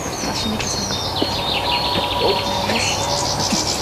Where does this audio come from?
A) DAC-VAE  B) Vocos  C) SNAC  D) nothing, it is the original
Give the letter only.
D